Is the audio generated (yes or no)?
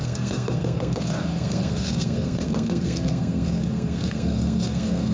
yes